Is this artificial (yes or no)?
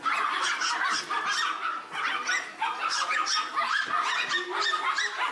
no